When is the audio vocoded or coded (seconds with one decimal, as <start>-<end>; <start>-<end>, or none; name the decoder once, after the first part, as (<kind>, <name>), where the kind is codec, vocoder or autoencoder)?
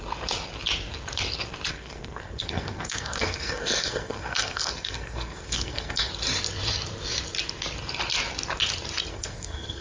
1.7-6.1 (codec, SNAC); 9.1-9.8